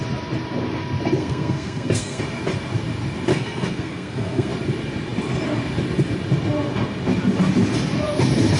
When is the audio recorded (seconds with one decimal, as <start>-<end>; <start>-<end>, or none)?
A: 0.0-1.2; 2.2-3.3; 4.5-8.6